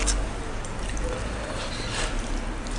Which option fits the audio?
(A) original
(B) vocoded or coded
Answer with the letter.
A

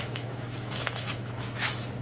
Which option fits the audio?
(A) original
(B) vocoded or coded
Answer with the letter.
B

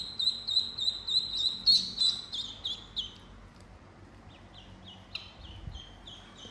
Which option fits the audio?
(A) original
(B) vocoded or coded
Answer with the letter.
A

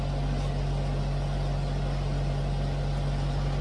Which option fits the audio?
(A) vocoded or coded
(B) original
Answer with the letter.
B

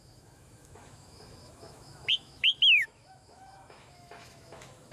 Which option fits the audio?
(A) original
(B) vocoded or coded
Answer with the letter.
B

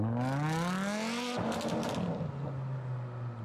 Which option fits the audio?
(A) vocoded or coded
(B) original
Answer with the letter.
B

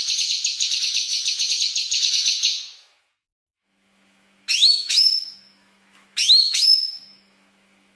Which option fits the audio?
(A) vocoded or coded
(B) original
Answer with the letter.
A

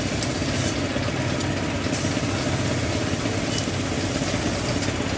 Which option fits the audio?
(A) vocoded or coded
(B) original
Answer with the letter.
B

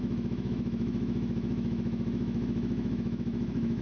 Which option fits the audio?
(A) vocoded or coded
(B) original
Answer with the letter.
A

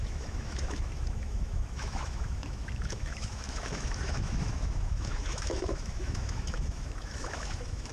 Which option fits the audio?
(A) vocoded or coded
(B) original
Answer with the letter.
A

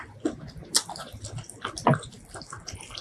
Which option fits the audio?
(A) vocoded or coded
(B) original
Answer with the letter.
B